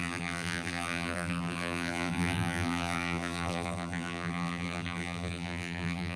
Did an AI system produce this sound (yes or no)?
yes